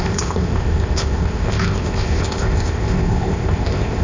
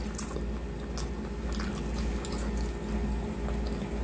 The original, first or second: second